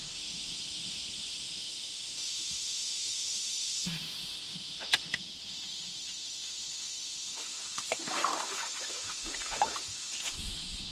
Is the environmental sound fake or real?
fake